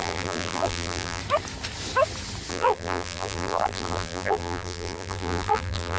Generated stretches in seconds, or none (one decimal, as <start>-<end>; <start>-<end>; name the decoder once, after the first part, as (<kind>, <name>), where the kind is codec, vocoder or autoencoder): 0.0-1.2 (vocoder, BigVGAN v2); 2.5-6.0